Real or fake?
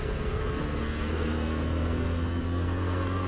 fake